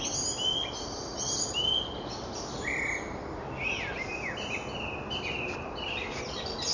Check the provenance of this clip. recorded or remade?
recorded